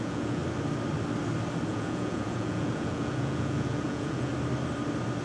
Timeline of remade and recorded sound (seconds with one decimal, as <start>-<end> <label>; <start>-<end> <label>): 0.0-0.4 remade; 0.4-1.7 recorded; 1.7-4.3 remade; 4.3-5.2 recorded